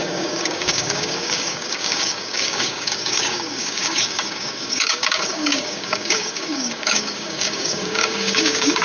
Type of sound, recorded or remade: remade